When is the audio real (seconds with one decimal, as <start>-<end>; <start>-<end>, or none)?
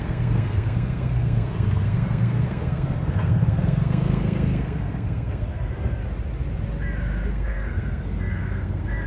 6.0-7.3